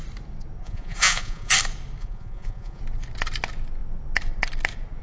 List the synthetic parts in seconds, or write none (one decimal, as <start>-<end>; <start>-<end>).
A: 0.6-1.5; 2.0-2.8